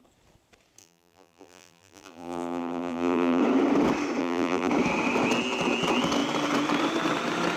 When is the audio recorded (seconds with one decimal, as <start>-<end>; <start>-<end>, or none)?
0.0-0.8; 3.4-4.2; 4.7-7.6